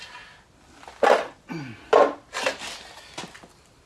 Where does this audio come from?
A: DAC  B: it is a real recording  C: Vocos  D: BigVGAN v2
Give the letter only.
B